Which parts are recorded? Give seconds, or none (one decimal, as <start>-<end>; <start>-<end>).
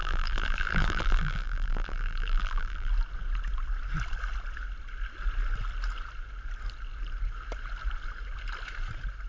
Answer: 2.9-9.3